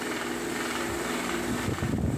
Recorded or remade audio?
recorded